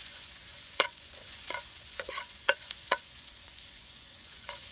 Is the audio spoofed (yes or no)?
yes